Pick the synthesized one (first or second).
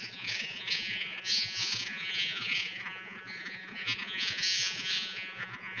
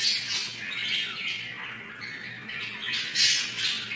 first